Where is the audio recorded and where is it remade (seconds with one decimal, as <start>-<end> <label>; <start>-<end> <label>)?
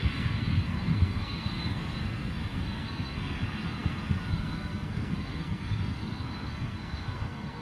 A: 0.0-7.6 remade